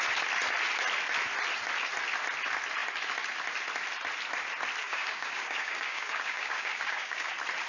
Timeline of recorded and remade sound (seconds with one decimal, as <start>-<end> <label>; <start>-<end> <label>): 0.0-4.8 recorded; 4.8-7.3 remade; 7.3-7.7 recorded